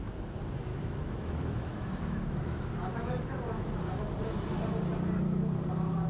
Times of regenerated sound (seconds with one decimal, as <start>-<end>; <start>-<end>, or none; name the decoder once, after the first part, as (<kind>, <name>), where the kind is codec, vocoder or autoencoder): 0.7-4.0 (autoencoder, DAC-VAE)